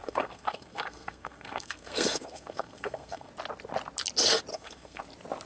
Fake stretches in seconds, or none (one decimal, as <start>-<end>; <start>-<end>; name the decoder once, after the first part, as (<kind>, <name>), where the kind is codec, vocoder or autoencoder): 0.0-3.3 (codec, SNAC); 4.5-5.0